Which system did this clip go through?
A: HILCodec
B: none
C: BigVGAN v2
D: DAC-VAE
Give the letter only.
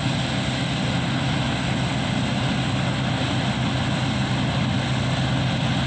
B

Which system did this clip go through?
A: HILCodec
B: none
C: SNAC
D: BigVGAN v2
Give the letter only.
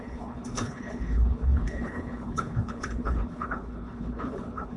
A